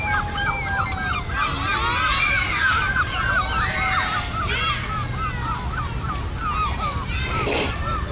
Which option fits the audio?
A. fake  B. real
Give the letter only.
B